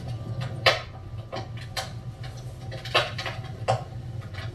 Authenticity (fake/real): real